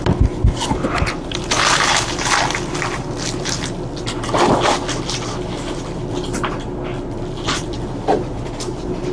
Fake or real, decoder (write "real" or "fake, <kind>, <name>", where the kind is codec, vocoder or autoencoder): real